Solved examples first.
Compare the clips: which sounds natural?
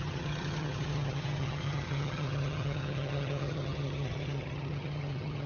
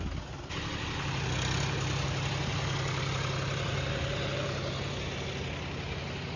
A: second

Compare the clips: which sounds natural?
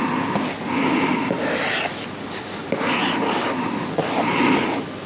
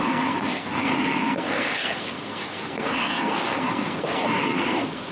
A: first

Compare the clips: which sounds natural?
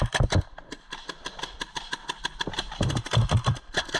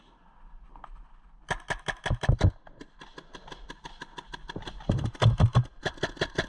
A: second